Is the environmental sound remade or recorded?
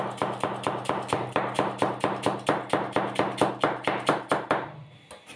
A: recorded